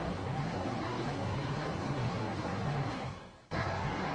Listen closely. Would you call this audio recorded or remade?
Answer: remade